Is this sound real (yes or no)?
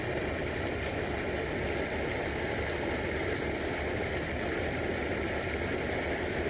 yes